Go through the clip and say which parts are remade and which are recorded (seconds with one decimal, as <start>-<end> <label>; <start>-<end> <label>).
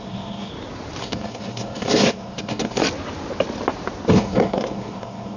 0.0-0.5 remade; 0.5-1.0 recorded; 1.0-2.8 remade; 2.8-4.1 recorded; 4.1-5.4 remade